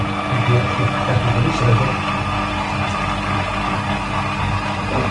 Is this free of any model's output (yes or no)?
yes